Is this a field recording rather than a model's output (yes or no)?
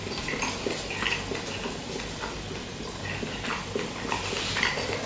yes